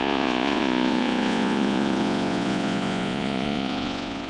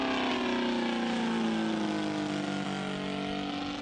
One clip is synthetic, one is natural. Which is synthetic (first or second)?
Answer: first